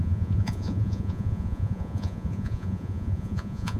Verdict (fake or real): fake